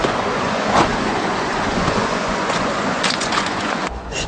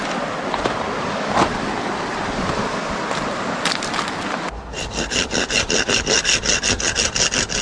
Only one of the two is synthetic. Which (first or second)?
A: first